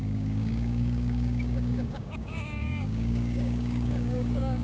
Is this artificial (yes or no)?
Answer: yes